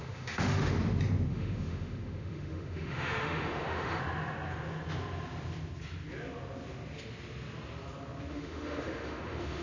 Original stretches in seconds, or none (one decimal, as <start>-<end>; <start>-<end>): 0.7-1.3; 4.0-8.3